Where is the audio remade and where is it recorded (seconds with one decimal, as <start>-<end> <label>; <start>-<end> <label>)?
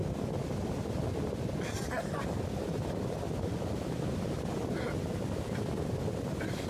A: 0.0-6.7 recorded